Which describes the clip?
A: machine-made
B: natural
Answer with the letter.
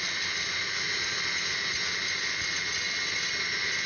B